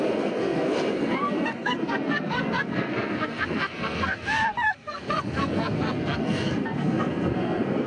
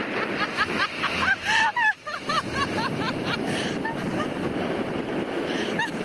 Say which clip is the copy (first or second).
first